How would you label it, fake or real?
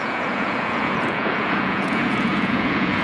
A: fake